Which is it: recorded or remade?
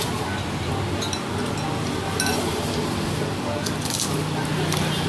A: recorded